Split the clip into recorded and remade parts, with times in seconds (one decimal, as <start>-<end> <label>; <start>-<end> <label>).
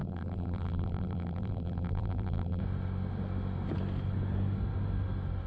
0.0-2.6 remade; 2.6-5.5 recorded